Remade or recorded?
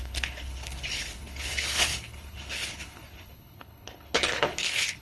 remade